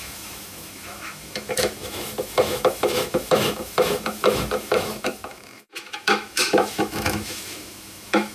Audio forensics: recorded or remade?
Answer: remade